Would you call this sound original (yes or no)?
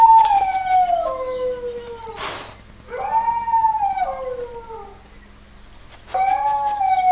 yes